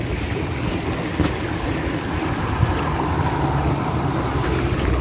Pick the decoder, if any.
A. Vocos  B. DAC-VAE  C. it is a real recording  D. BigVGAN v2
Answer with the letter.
C